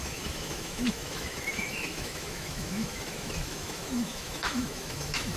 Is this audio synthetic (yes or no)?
yes